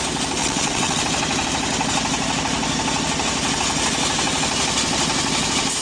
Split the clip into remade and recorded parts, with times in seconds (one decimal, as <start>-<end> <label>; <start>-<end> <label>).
0.0-0.4 recorded; 0.4-1.0 remade; 1.0-5.8 recorded